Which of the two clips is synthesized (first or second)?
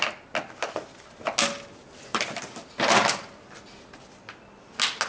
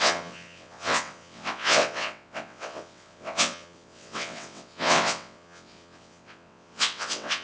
second